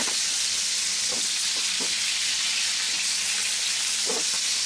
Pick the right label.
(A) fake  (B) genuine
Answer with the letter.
B